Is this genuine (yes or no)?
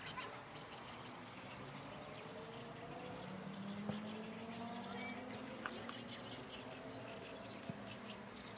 yes